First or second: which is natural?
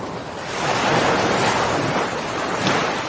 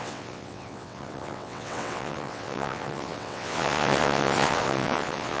first